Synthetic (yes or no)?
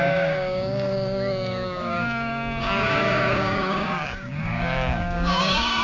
yes